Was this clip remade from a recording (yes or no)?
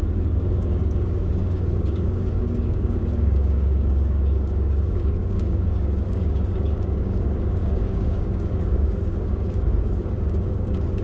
yes